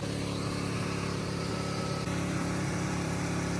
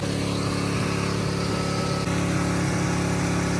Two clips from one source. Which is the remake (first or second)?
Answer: first